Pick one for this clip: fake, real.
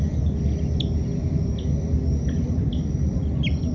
fake